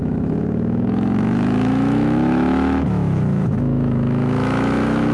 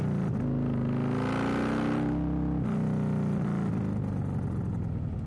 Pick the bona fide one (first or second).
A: second